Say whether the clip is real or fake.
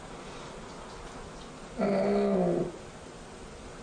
real